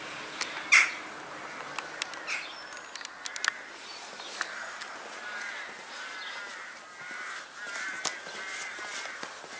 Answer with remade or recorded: recorded